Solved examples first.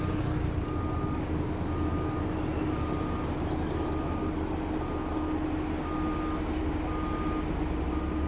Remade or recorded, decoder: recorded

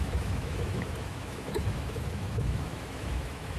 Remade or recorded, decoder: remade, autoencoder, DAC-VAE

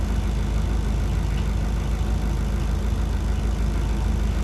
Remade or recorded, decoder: recorded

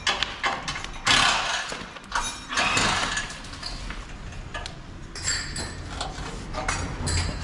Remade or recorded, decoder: recorded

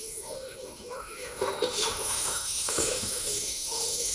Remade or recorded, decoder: remade, autoencoder, DAC-VAE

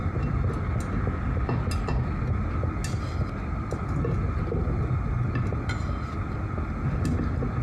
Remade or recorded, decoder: recorded